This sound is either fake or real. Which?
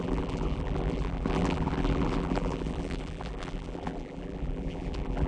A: fake